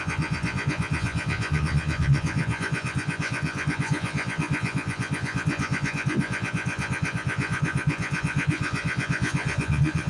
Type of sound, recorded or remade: remade